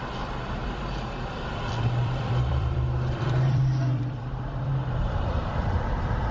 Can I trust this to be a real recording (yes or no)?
no